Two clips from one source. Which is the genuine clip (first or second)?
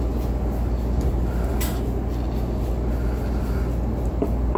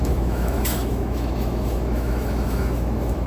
first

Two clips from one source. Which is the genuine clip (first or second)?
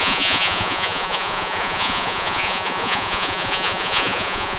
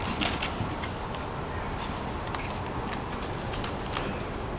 second